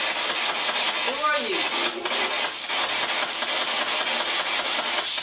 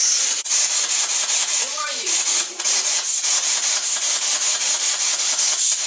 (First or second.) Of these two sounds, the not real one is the second